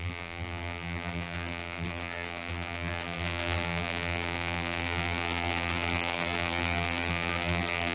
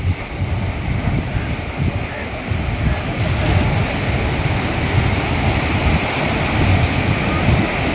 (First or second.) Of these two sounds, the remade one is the first